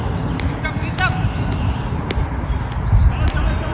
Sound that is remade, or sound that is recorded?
recorded